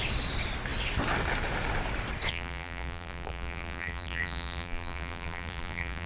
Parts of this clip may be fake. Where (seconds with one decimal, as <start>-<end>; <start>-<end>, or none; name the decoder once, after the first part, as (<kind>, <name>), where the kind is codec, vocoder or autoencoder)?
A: 2.3-6.1 (vocoder, BigVGAN v2)